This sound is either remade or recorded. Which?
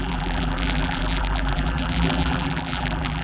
remade